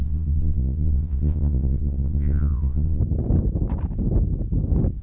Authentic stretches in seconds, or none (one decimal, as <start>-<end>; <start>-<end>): 3.0-5.0

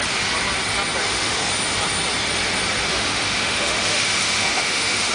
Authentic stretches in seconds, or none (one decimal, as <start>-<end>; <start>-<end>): 0.0-1.0; 1.5-2.9

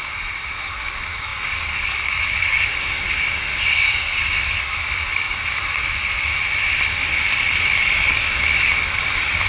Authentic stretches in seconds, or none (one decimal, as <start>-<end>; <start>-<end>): 6.3-6.9